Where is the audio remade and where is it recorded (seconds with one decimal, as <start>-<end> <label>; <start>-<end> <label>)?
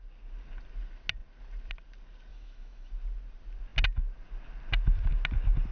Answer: 0.0-2.3 recorded; 2.3-2.9 remade; 2.9-5.7 recorded